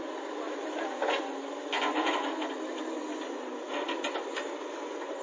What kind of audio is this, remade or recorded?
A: recorded